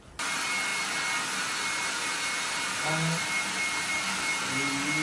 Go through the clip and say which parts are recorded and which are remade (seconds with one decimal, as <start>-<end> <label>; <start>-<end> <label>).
0.0-5.0 recorded